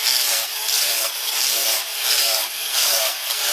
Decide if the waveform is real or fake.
fake